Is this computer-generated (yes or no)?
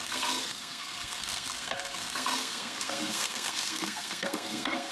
yes